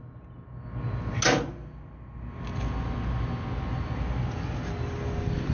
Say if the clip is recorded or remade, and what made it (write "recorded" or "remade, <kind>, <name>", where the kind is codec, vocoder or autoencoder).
recorded